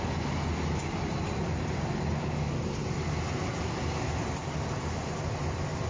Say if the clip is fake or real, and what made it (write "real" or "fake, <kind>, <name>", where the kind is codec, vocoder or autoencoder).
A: real